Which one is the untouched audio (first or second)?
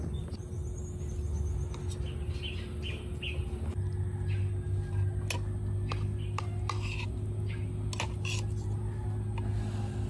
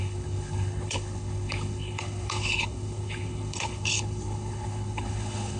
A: first